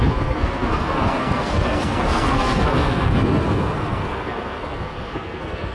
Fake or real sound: fake